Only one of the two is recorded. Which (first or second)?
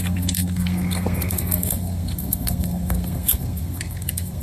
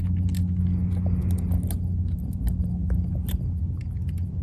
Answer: second